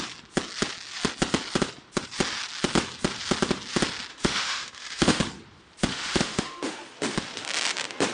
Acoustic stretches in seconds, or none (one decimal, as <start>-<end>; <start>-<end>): 0.0-4.1; 5.2-5.9; 6.8-8.1

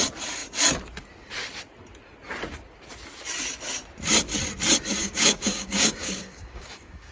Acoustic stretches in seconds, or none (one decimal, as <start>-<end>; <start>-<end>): 0.0-5.0

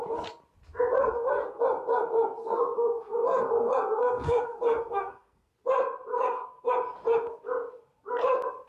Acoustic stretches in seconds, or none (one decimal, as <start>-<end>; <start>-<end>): 0.0-1.0; 1.6-2.4; 5.5-6.1; 6.7-8.7

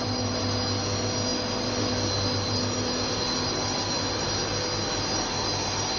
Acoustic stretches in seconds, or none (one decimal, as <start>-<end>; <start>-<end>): 0.0-6.0